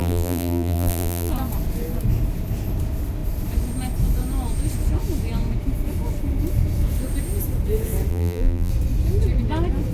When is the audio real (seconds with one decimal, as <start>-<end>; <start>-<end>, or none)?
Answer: 1.3-8.1; 8.7-9.9